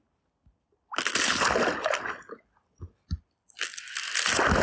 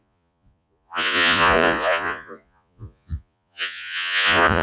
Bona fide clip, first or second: first